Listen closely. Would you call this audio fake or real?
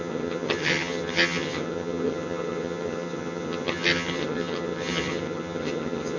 fake